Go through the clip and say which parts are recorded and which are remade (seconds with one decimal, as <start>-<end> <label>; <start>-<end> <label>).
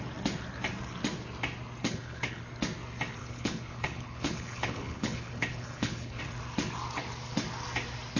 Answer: 0.0-1.8 recorded; 1.8-2.4 remade; 2.4-3.2 recorded; 3.2-6.2 remade; 6.2-8.2 recorded